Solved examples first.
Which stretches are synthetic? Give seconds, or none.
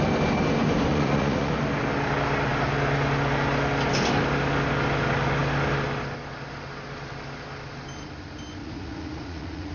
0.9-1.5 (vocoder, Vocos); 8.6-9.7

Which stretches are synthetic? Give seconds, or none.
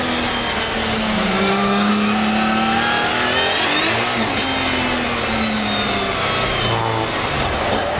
0.7-1.9 (codec, DAC)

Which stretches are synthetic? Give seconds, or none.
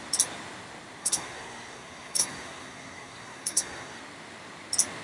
1.0-4.0 (codec, SNAC)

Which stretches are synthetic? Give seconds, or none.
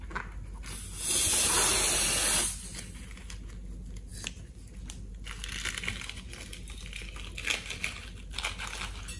none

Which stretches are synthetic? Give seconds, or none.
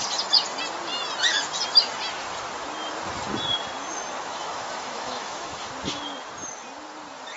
4.3-5.7 (autoencoder, DAC-VAE)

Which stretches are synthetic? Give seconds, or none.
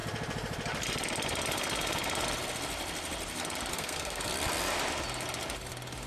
3.7-4.3 (codec, SNAC)